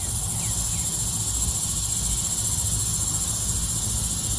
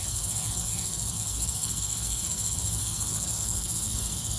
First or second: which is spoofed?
second